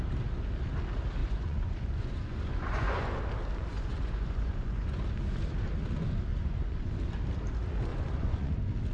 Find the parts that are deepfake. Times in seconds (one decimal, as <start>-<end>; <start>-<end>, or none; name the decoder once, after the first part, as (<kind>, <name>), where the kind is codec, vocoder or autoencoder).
1.2-3.2 (vocoder, Vocos); 3.7-5.0; 6.3-6.9; 7.9-8.5